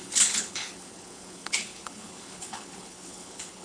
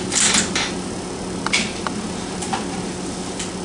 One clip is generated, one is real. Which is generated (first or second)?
first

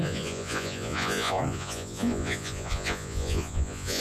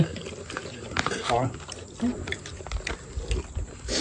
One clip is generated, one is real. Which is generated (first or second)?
first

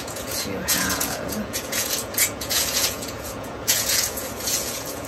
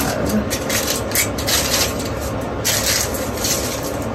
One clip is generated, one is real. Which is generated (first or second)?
first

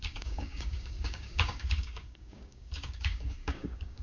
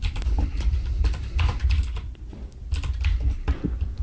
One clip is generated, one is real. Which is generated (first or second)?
first